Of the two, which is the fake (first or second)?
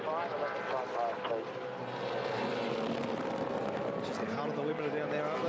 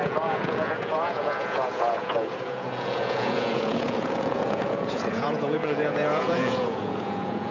second